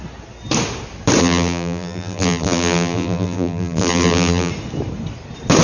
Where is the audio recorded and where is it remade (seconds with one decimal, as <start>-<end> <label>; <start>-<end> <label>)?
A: 0.0-1.2 recorded; 1.2-4.5 remade; 4.5-5.6 recorded